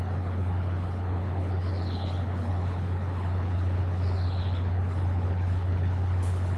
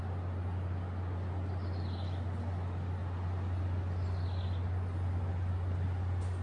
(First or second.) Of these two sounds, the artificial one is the first